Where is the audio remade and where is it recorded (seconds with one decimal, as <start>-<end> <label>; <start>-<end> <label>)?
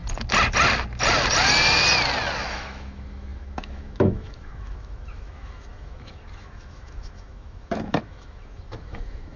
0.0-2.5 recorded; 2.5-9.4 remade